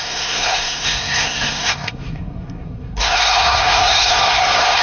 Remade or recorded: remade